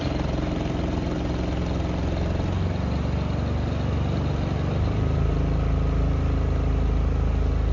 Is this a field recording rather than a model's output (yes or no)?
yes